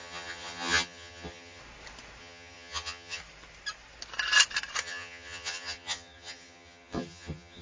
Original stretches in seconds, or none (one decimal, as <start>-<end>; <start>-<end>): 1.6-2.2; 3.2-4.8